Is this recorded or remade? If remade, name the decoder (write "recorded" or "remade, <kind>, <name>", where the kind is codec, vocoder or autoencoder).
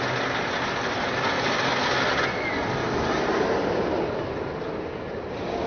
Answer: recorded